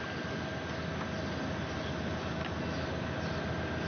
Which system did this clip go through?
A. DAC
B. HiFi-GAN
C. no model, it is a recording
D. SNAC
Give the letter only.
C